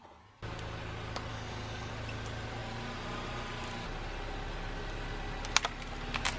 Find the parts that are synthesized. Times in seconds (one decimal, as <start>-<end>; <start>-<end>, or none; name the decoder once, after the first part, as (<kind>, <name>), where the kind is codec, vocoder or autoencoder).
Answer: 1.3-1.9 (codec, DAC)